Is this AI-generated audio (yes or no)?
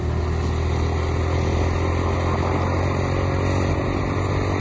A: no